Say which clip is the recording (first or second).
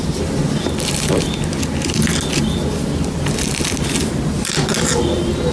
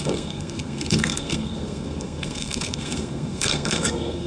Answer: first